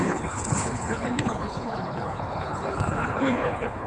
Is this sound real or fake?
fake